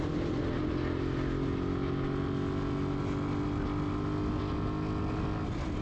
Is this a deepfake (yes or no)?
no